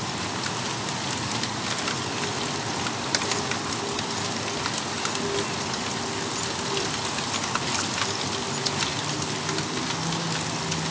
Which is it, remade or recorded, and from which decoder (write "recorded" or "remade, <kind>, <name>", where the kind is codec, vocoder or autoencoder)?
recorded